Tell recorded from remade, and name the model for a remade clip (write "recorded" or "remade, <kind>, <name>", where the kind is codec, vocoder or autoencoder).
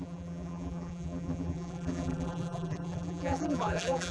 remade, vocoder, BigVGAN v2